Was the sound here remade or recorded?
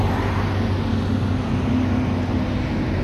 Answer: recorded